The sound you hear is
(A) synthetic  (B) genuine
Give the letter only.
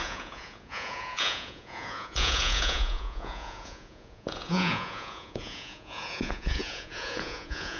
A